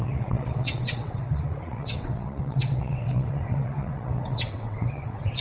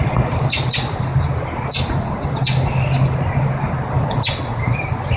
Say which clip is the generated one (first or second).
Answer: first